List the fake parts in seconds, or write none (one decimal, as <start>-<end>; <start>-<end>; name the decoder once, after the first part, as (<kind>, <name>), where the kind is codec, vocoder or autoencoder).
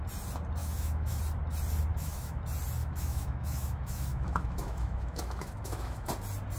0.6-1.2 (autoencoder, DAC-VAE); 1.9-2.4; 2.8-6.1